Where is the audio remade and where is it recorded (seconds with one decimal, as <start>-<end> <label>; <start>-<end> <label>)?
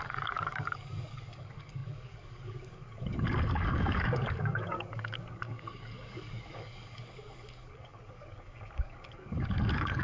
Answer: 0.0-10.0 remade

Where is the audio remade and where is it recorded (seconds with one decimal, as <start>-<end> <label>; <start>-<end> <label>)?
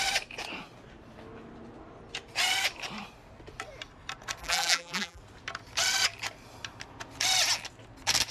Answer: 0.0-4.4 recorded; 4.4-5.2 remade; 5.2-8.3 recorded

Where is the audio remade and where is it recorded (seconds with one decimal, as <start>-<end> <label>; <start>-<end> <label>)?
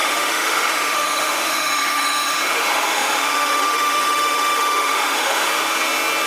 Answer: 0.0-5.5 remade; 5.5-6.3 recorded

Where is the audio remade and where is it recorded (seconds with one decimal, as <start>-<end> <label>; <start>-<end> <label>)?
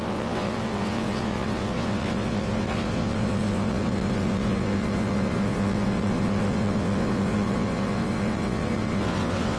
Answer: 0.0-9.6 remade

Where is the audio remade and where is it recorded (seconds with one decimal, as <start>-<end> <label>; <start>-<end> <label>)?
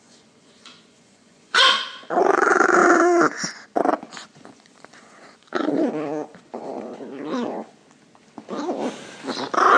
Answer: 0.0-7.8 remade; 7.8-9.8 recorded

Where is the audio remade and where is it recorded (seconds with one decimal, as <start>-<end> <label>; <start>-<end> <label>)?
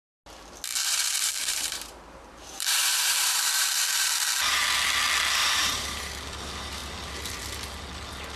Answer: 0.0-0.7 recorded; 0.7-4.6 remade; 4.6-5.4 recorded; 5.4-6.1 remade; 6.1-8.4 recorded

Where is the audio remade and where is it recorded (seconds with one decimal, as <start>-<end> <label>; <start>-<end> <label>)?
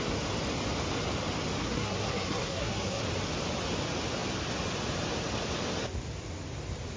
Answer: 0.0-1.6 recorded; 1.6-3.0 remade; 3.0-7.0 recorded